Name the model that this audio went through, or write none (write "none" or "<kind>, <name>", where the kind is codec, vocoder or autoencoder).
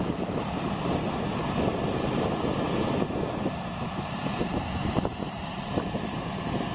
vocoder, BigVGAN v2